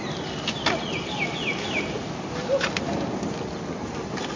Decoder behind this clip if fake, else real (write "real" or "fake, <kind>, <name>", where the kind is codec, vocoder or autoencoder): real